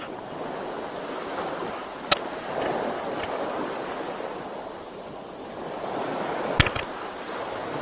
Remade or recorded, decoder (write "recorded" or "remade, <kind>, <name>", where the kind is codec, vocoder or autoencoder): recorded